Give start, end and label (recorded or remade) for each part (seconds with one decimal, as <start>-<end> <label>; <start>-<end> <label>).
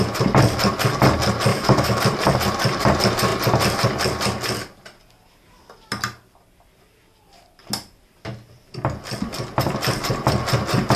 0.0-1.5 recorded; 1.5-2.0 remade; 2.0-11.0 recorded